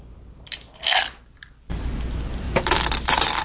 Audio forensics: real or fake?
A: real